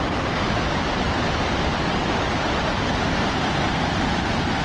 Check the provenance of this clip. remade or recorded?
recorded